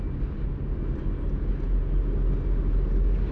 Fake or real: real